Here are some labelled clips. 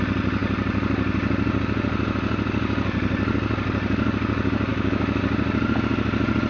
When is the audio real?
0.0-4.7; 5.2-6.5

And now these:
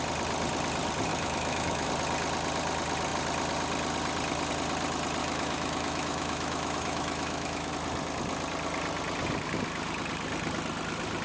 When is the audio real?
0.0-1.1; 1.9-5.2; 7.7-11.2

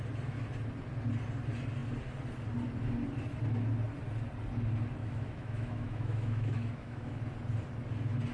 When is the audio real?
0.0-5.0; 7.2-8.3

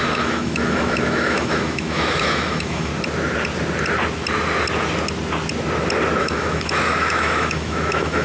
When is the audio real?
2.9-6.2

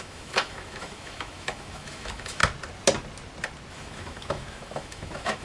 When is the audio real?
2.4-3.7

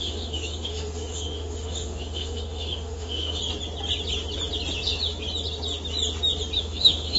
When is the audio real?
3.4-6.6

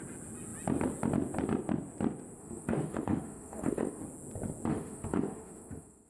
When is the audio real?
0.0-2.4; 4.0-4.7

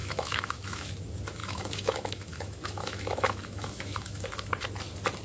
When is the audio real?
0.9-1.4; 4.5-5.2